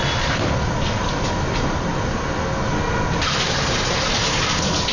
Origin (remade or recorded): recorded